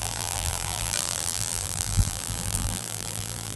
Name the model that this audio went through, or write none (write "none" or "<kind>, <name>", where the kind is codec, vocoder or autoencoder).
vocoder, BigVGAN v2